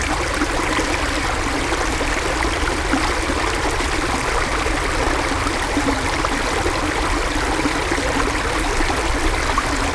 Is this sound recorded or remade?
recorded